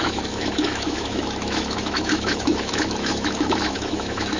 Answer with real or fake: fake